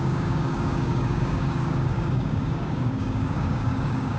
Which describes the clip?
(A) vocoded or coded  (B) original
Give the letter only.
A